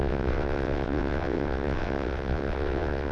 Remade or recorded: remade